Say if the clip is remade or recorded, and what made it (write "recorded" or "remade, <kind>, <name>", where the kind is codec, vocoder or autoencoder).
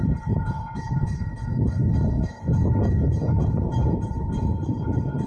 remade, codec, HILCodec